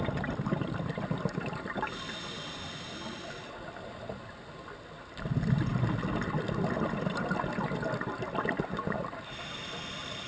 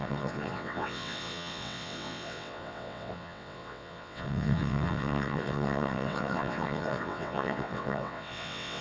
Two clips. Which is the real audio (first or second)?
first